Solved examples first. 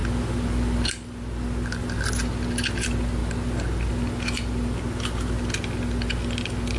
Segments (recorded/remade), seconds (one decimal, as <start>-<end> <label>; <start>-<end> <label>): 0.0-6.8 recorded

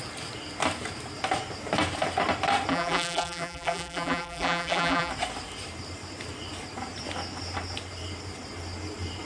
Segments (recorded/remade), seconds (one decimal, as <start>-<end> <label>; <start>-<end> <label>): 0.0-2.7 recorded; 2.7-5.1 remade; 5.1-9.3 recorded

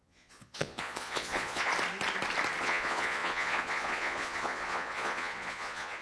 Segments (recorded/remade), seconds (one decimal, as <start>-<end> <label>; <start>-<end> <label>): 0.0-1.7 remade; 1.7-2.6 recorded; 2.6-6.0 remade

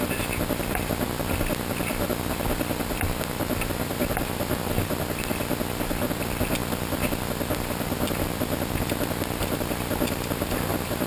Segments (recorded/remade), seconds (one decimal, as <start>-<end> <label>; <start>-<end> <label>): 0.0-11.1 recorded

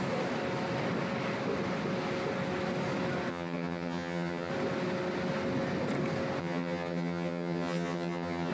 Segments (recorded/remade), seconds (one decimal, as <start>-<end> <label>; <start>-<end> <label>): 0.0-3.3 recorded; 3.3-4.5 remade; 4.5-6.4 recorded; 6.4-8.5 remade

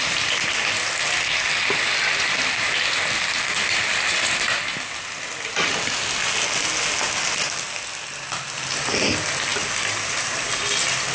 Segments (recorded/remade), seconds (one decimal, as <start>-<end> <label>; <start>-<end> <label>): 0.0-11.1 recorded

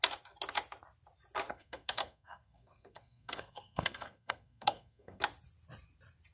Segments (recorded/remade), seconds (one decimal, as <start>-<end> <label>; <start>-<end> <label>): 0.0-1.5 recorded; 1.5-5.2 remade; 5.2-6.3 recorded